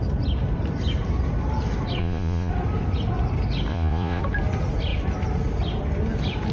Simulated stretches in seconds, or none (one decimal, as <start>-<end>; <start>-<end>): 2.0-2.5; 3.7-4.2

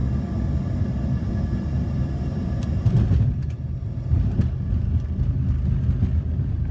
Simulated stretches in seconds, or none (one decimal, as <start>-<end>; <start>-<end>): none

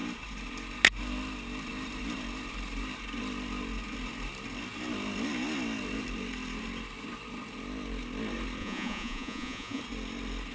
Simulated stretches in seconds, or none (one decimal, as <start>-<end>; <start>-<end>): 8.6-9.8

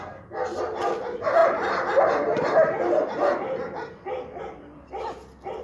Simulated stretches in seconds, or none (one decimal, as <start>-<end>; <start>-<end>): none

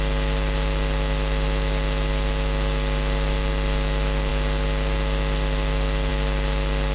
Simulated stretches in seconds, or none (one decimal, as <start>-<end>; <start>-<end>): none

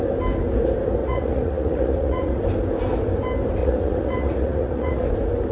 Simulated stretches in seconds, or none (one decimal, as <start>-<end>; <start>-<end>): 1.0-2.4; 3.6-5.1